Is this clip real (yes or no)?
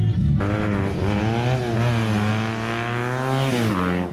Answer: yes